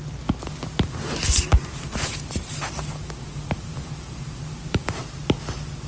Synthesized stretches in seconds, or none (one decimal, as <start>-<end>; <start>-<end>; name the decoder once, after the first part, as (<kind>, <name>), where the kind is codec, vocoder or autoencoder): 1.5-5.0 (vocoder, BigVGAN v2)